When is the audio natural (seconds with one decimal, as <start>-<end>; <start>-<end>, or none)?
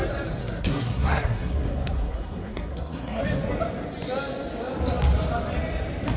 0.0-0.4; 3.2-6.2